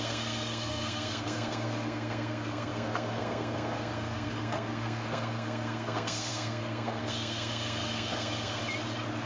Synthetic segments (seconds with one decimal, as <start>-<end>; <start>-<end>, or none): 0.0-8.6